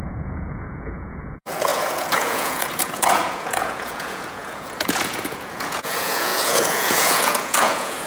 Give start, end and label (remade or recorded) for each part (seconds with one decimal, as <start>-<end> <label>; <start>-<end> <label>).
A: 0.0-8.1 remade